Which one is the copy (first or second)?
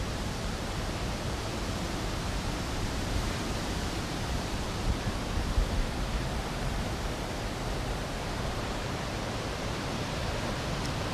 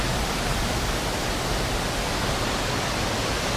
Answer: first